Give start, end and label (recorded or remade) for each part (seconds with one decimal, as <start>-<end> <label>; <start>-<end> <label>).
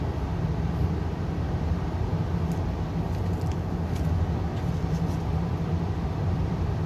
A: 0.0-2.1 remade; 2.1-6.2 recorded; 6.2-6.9 remade